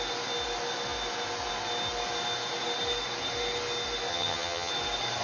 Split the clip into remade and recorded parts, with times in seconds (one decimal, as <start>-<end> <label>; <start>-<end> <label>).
0.0-4.1 recorded; 4.1-4.7 remade; 4.7-5.2 recorded